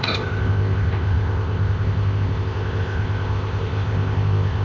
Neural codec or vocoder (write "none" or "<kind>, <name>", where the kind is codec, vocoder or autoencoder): codec, ZipCodec